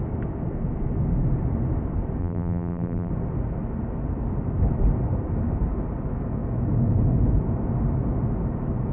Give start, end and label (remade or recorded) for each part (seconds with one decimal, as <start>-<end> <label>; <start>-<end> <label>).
0.0-2.2 recorded; 2.2-3.1 remade; 3.1-8.9 recorded